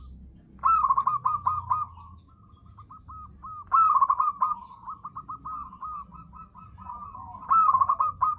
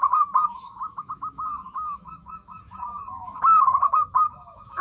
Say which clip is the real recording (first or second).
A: first